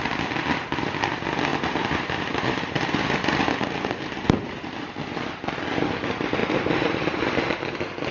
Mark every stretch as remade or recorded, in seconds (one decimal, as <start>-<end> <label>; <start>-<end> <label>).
0.0-1.5 recorded; 1.5-3.9 remade; 3.9-6.4 recorded; 6.4-7.4 remade; 7.4-8.1 recorded